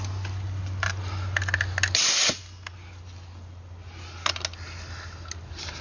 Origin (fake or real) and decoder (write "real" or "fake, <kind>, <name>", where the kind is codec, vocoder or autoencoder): real